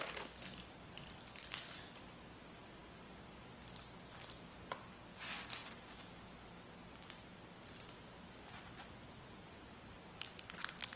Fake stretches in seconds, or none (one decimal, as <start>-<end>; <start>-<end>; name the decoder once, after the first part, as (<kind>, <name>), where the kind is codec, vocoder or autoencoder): none